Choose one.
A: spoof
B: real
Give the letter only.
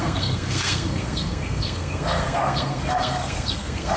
A